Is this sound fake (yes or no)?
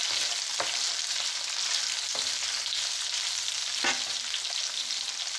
no